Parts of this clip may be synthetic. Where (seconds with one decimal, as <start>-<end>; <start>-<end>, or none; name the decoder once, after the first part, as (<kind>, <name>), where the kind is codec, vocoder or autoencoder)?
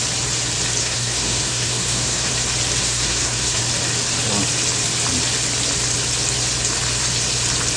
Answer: 0.8-2.3 (codec, SNAC); 2.8-3.6